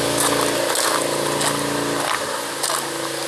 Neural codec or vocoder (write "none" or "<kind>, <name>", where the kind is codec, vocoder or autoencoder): none